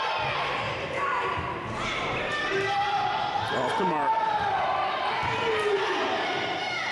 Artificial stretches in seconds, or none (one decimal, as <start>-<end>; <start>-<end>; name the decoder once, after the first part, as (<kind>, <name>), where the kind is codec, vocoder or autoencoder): 2.5-4.9 (vocoder, BigVGAN v2)